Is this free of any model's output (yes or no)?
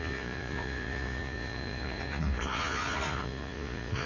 no